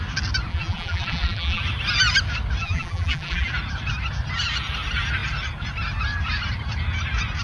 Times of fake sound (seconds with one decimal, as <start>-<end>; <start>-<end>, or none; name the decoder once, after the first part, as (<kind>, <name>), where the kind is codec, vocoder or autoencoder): 0.5-1.6 (vocoder, BigVGAN v2); 2.6-3.5